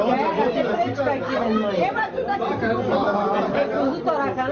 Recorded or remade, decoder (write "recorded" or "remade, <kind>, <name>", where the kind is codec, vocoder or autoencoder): recorded